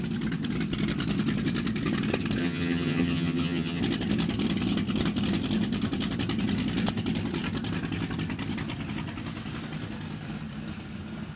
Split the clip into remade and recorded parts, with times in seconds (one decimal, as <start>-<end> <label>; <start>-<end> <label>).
0.0-2.4 recorded; 2.4-3.8 remade; 3.8-11.4 recorded